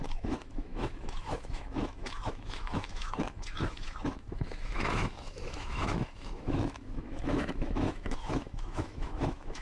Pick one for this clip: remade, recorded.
remade